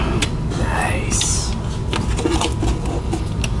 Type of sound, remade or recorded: recorded